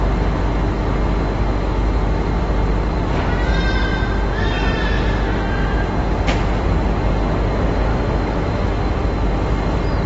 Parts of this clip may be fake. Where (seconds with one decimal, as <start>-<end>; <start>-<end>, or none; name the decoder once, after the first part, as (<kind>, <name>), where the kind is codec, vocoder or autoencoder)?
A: 7.9-8.6 (autoencoder, DAC-VAE)